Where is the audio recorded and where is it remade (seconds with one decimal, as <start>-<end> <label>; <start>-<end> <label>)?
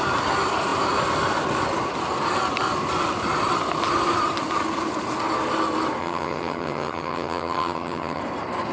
0.0-6.0 recorded; 6.0-8.2 remade; 8.2-8.7 recorded